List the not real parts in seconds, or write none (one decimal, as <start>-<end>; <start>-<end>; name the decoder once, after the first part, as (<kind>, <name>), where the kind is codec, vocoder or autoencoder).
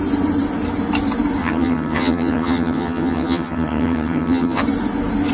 1.4-4.6 (vocoder, HiFi-GAN)